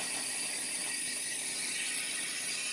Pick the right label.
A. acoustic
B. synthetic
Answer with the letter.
A